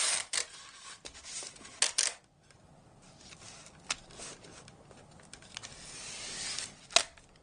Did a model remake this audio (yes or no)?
no